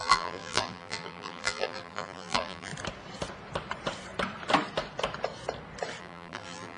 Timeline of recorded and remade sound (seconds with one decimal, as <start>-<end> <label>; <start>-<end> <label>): 0.0-2.7 remade; 2.7-6.0 recorded; 6.0-6.8 remade